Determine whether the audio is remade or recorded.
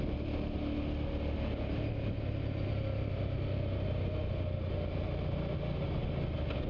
recorded